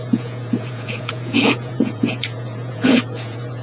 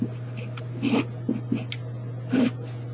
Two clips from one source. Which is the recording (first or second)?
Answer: second